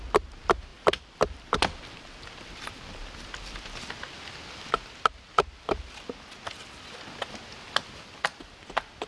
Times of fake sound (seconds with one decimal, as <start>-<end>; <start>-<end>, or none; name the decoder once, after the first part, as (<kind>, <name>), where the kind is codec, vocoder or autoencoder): none